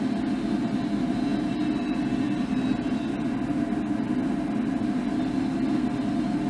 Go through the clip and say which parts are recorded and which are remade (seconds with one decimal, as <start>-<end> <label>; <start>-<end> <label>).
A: 0.0-6.5 recorded